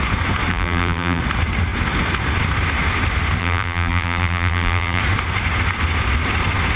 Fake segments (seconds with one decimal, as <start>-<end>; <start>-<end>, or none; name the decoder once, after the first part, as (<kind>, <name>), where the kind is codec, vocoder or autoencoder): 0.5-1.2 (vocoder, BigVGAN v2); 3.4-5.0